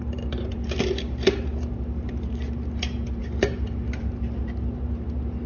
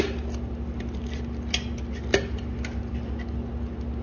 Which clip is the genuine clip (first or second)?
second